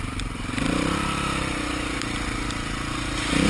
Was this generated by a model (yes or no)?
yes